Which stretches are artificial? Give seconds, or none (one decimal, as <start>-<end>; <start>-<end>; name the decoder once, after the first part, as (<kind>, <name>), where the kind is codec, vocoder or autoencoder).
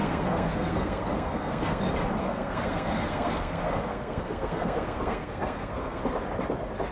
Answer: 0.0-1.8 (codec, SNAC); 2.2-6.0